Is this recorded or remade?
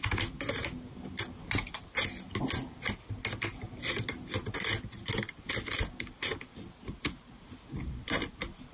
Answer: recorded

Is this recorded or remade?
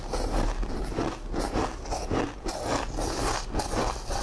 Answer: recorded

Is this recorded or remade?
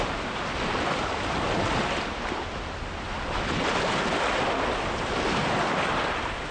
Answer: recorded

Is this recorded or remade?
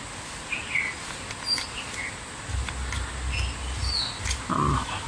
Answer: recorded